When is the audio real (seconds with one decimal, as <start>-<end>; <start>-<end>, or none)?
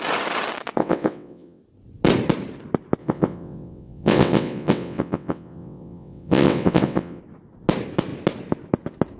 0.0-0.8; 1.6-3.0; 7.2-9.2